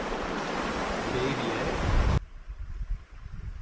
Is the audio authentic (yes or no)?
yes